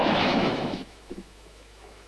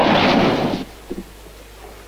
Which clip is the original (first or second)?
second